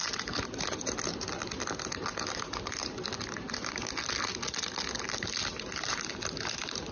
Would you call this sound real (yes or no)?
yes